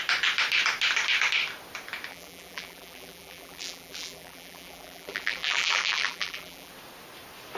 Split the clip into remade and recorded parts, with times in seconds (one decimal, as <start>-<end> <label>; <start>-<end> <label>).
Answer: 0.0-2.1 recorded; 2.1-6.7 remade; 6.7-7.6 recorded